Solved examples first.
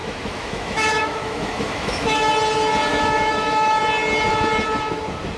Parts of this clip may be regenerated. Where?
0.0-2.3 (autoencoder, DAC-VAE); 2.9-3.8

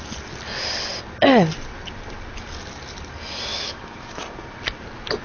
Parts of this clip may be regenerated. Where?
3.5-4.2 (autoencoder, DAC-VAE)

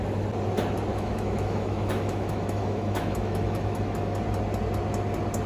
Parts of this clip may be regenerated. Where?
0.9-4.2 (autoencoder, DAC-VAE)

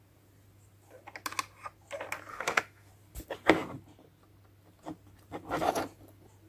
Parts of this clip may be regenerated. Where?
2.3-2.9 (autoencoder, DAC-VAE)